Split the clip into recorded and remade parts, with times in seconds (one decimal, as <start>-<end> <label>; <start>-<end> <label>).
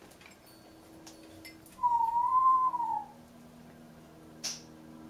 0.0-5.1 recorded